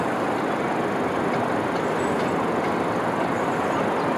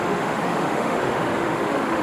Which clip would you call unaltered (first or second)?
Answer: first